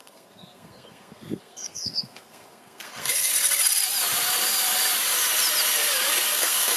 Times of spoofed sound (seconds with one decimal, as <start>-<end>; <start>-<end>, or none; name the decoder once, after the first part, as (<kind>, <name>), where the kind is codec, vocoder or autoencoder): 0.0-3.3 (codec, SNAC); 6.3-6.8